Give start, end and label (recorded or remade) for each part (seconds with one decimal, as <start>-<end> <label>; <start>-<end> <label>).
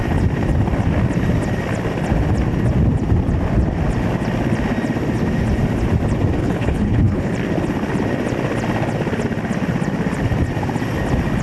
0.0-6.4 recorded; 6.4-7.3 remade; 7.3-11.4 recorded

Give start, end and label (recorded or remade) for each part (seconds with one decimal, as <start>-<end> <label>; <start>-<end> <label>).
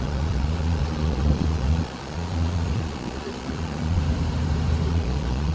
0.0-4.0 remade; 4.0-4.9 recorded; 4.9-5.5 remade